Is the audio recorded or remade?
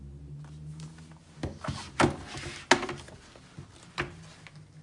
recorded